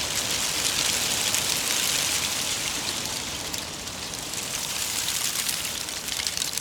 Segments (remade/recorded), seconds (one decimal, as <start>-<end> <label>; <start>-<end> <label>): 0.0-2.3 recorded; 2.3-6.6 remade